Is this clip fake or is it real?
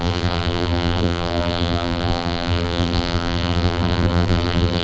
fake